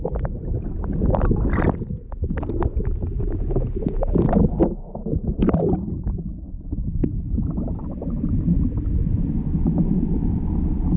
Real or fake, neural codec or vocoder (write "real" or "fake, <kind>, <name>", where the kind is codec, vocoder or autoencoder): real